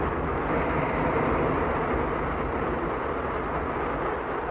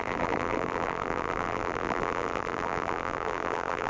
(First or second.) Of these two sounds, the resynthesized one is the second